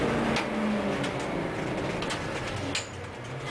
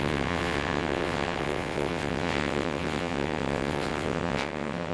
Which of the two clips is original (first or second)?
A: first